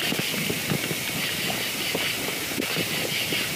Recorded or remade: recorded